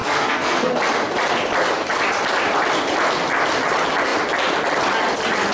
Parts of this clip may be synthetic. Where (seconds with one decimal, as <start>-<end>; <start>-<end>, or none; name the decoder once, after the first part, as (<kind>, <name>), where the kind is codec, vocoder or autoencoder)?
0.0-0.7 (codec, SNAC)